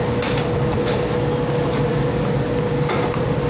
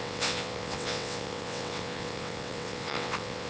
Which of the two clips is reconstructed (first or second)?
second